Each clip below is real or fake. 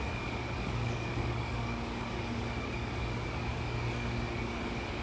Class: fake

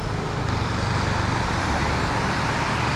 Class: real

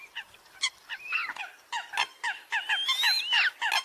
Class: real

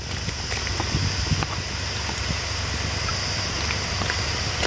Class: real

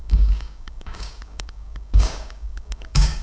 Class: fake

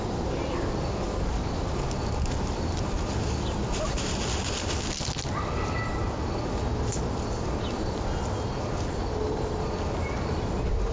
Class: real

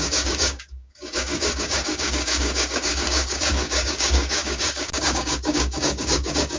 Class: fake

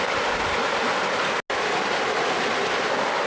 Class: real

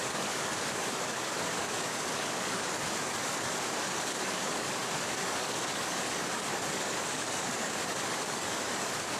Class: fake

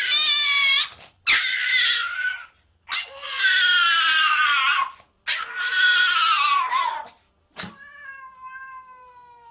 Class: real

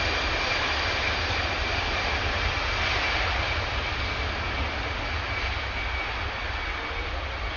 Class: real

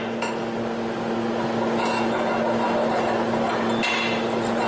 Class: real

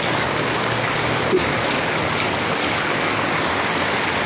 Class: fake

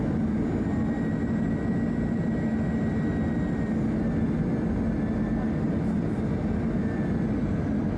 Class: real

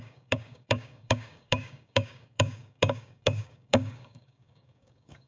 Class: fake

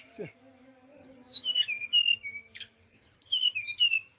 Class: fake